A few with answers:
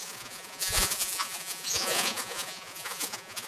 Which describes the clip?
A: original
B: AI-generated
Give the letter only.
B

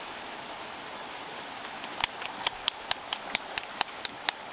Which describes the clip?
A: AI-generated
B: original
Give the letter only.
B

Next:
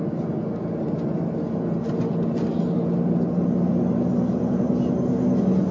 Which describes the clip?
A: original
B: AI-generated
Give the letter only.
A